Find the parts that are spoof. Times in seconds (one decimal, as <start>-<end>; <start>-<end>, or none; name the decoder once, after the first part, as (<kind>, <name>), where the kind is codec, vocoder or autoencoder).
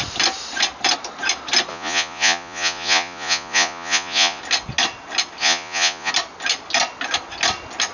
1.7-4.4 (vocoder, Vocos); 5.4-6.1